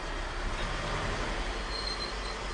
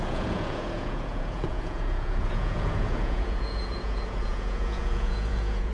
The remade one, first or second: second